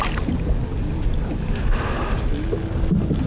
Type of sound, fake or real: real